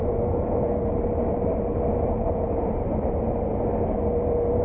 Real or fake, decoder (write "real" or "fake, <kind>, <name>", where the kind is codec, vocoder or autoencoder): fake, vocoder, BigVGAN v2